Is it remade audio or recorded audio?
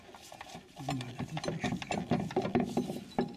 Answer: recorded